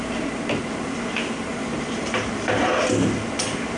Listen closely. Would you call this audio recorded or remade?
recorded